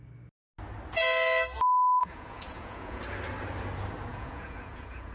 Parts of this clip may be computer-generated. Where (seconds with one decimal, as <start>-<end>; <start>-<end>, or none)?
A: 2.0-3.0; 4.1-5.1